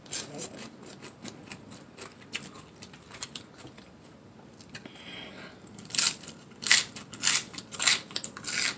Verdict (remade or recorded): recorded